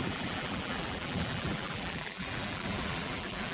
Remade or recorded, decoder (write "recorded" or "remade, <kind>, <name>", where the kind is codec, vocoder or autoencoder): remade, vocoder, BigVGAN v2